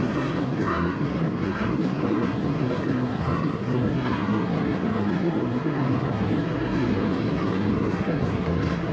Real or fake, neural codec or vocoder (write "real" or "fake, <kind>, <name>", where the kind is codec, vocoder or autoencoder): fake, codec, SNAC